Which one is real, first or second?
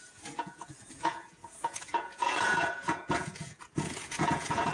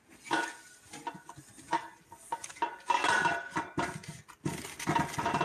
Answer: second